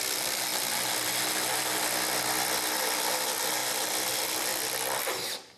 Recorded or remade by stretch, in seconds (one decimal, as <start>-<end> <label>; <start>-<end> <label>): 0.0-0.5 remade; 0.5-2.8 recorded; 2.8-3.6 remade; 3.6-4.1 recorded; 4.1-4.5 remade; 4.5-5.0 recorded; 5.0-5.6 remade